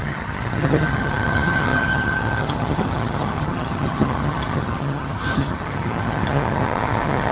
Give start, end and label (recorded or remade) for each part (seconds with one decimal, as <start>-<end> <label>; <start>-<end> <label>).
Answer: 0.0-7.3 remade